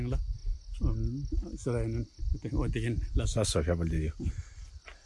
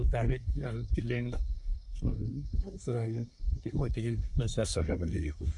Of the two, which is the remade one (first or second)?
second